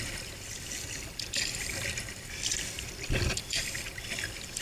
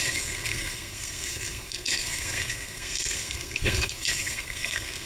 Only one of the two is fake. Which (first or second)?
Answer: second